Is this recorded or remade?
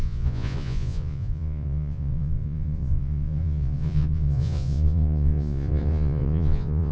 remade